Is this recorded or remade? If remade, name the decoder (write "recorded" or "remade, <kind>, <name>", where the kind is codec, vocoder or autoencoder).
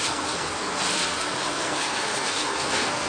remade, codec, SNAC